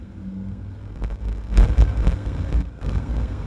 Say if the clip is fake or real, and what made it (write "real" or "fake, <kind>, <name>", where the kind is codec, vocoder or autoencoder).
fake, codec, SNAC